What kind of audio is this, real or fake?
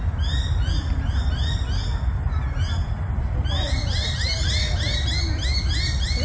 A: real